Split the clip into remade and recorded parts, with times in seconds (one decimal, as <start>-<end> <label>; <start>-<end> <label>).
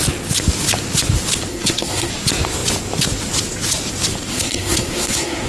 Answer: 0.0-1.5 recorded; 1.5-2.1 remade; 2.1-4.3 recorded; 4.3-5.5 remade